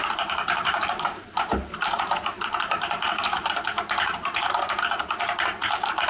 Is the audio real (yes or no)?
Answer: no